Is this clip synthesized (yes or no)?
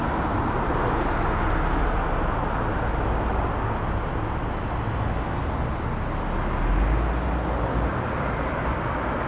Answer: no